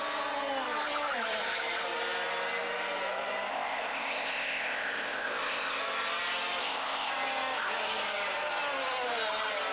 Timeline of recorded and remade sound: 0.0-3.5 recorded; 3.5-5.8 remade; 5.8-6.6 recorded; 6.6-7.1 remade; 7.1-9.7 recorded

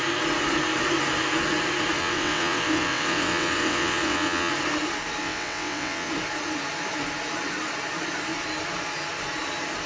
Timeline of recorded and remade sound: 0.0-2.0 recorded; 2.0-4.5 remade; 4.5-5.2 recorded; 5.2-6.1 remade; 6.1-9.9 recorded